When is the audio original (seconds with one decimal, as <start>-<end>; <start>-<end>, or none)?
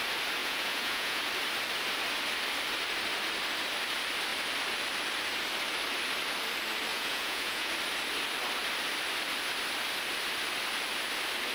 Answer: 0.0-0.4; 1.2-6.9; 7.7-11.5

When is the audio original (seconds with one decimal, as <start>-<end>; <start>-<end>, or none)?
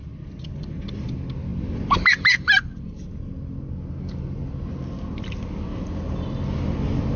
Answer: 0.0-7.2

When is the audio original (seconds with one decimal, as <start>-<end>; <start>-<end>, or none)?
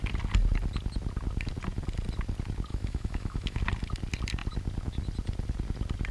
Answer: 0.0-2.7; 3.6-6.1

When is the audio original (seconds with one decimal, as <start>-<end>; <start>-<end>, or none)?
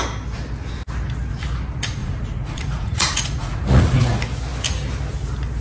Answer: 0.0-2.0; 4.0-5.6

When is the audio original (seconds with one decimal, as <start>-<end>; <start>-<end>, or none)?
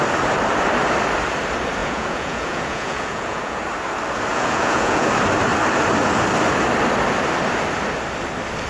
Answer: 0.0-1.8; 3.6-4.3; 5.1-8.7